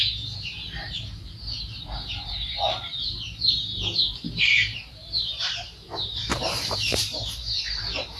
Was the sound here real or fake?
fake